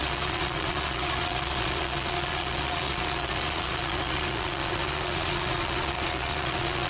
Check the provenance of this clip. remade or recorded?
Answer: remade